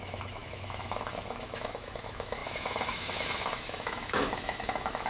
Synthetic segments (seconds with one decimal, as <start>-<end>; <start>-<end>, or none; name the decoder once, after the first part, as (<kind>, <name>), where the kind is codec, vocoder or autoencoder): 0.0-5.1 (autoencoder, DAC-VAE)